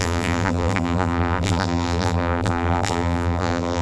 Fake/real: fake